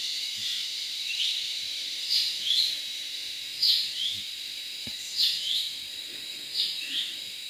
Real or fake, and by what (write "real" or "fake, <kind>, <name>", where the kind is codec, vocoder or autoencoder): fake, autoencoder, DAC-VAE